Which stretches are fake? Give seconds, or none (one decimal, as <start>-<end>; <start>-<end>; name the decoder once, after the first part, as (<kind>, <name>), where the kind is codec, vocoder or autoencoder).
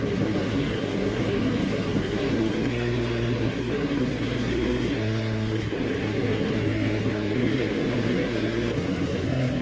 0.0-9.6 (codec, SNAC)